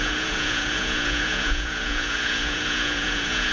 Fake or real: fake